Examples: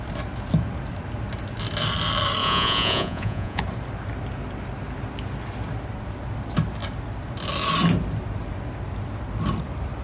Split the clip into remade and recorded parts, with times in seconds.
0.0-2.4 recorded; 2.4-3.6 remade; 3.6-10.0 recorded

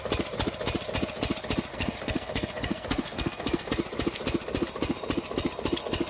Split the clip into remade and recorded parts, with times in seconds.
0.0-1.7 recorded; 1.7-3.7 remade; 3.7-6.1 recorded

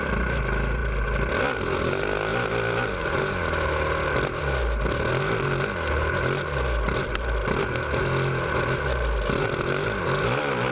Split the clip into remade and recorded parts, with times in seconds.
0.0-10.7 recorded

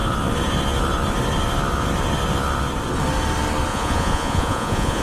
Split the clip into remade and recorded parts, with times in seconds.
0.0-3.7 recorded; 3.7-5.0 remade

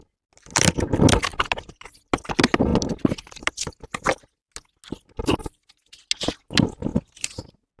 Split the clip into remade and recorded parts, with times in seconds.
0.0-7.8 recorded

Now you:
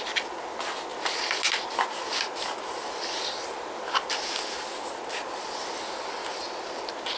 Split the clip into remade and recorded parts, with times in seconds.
0.0-7.2 recorded

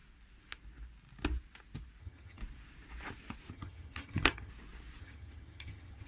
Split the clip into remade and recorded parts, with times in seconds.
0.0-2.0 recorded; 2.0-2.4 remade; 2.4-3.5 recorded; 3.5-4.5 remade; 4.5-5.0 recorded; 5.0-6.1 remade